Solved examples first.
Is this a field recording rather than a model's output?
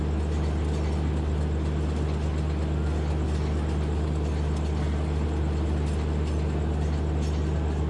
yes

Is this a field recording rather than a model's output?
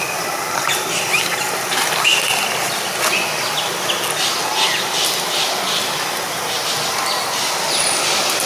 yes